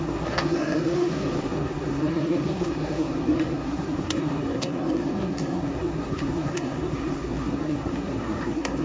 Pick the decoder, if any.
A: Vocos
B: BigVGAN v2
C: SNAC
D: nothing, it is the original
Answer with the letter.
C